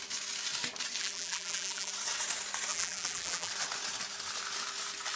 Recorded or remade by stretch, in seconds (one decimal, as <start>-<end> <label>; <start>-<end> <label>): 0.0-1.0 recorded; 1.0-1.9 remade; 1.9-2.7 recorded; 2.7-3.5 remade; 3.5-5.2 recorded